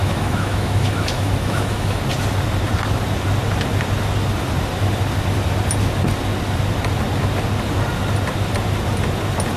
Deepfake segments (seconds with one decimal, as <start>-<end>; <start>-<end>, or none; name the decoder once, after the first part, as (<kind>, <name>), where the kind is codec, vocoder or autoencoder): 0.0-2.0 (autoencoder, DAC-VAE)